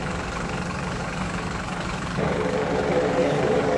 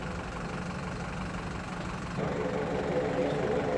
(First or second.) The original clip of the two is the second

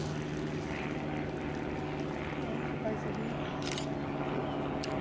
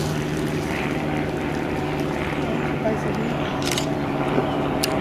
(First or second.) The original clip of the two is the first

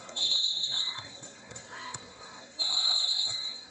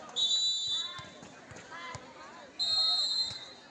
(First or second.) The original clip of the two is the second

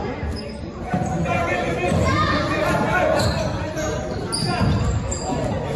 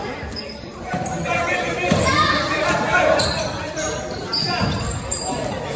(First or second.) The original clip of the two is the first